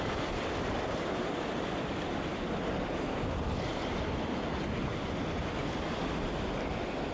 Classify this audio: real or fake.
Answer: real